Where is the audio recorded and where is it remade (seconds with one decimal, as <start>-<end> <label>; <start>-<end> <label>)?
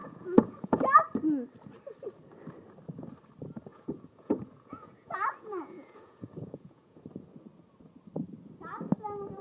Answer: 0.0-0.8 remade; 0.8-3.7 recorded; 3.7-7.0 remade; 7.0-9.4 recorded